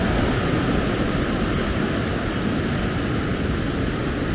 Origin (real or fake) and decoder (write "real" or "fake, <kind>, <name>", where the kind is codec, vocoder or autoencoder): real